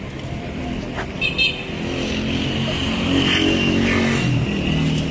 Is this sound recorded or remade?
recorded